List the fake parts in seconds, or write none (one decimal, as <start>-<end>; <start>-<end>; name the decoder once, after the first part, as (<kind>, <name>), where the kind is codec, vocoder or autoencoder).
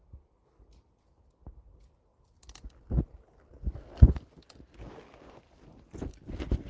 none